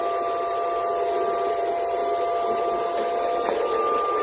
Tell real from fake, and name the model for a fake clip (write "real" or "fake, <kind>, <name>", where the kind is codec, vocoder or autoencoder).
real